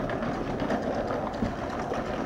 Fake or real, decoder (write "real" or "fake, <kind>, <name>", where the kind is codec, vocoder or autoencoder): real